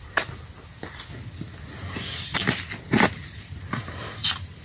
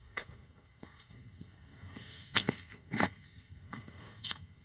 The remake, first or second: second